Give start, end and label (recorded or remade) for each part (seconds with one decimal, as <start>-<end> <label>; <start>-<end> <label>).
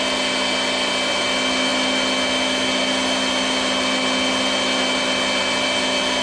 0.0-6.2 recorded